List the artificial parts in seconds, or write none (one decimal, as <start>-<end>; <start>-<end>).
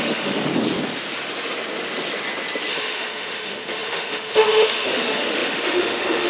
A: 0.0-0.5; 2.7-6.3